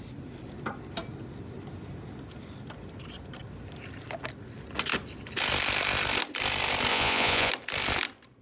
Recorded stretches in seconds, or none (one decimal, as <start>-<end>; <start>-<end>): 0.0-6.9; 7.5-8.4